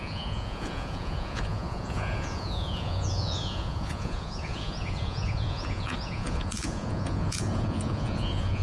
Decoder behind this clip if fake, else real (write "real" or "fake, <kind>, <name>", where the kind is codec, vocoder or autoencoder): fake, vocoder, Vocos